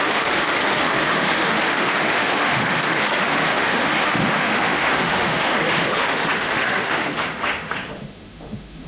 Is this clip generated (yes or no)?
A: yes